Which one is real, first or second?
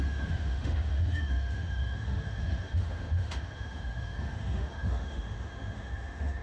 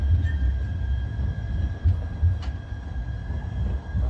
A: second